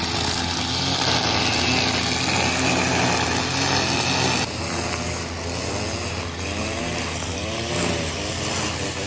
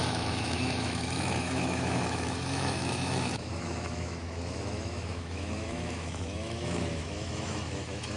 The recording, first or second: first